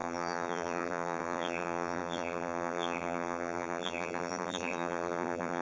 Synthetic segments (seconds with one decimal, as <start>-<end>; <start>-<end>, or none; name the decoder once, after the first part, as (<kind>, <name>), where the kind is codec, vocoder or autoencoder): 0.0-5.6 (vocoder, BigVGAN v2)